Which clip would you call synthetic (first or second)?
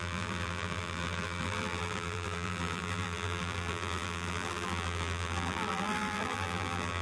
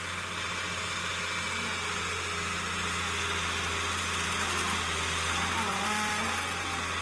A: first